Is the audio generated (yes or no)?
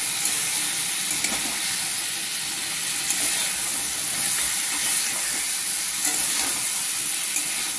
no